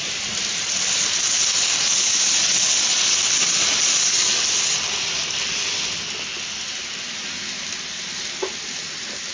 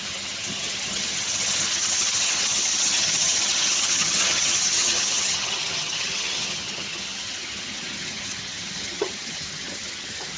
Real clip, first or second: first